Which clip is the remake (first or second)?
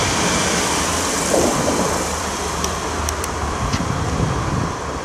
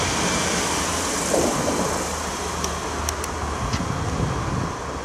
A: first